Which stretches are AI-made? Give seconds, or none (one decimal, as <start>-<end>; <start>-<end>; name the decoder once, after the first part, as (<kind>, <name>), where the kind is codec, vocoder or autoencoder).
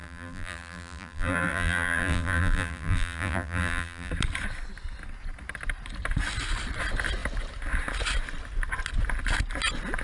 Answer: 0.0-4.1 (vocoder, BigVGAN v2)